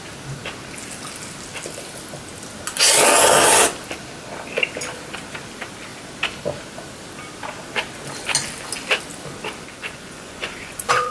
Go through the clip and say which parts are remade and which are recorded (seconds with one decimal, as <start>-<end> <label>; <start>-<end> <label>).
0.0-9.8 recorded; 9.8-11.1 remade